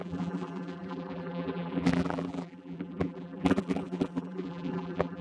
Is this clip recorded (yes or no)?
no